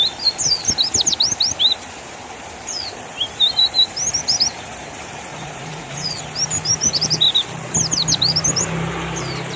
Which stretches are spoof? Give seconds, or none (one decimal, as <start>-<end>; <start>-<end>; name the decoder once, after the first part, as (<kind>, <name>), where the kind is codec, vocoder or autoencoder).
5.3-6.2 (vocoder, Vocos)